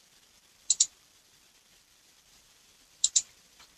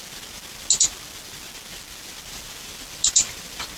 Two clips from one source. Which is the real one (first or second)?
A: second